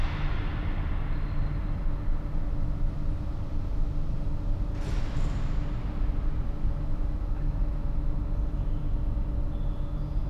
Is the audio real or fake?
real